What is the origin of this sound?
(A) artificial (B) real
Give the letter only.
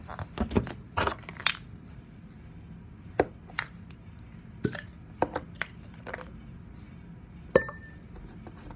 B